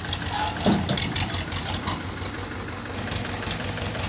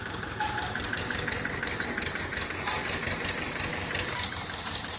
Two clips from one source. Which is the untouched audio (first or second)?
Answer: first